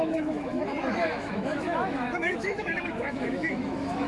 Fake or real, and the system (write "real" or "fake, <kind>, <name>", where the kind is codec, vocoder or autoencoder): fake, autoencoder, DAC-VAE